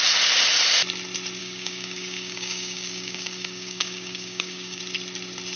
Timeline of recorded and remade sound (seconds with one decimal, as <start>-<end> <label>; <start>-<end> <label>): 0.0-1.4 recorded; 1.4-4.8 remade; 4.8-5.6 recorded